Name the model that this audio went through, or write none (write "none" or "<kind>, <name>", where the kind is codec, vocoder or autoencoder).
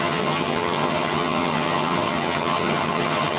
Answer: vocoder, HiFi-GAN